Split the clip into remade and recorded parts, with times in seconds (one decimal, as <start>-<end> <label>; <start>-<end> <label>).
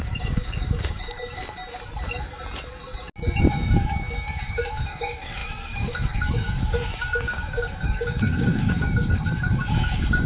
0.0-1.4 remade; 1.4-3.4 recorded; 3.4-10.3 remade